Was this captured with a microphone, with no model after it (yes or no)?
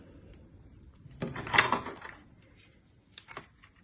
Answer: yes